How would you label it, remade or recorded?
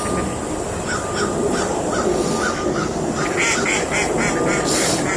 remade